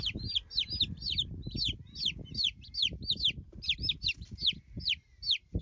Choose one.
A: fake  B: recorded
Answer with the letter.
B